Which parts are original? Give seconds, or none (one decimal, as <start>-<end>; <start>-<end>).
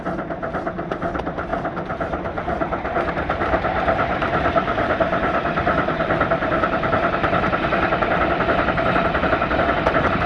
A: 0.0-10.3